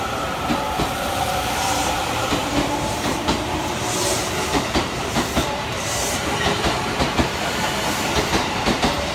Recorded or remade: remade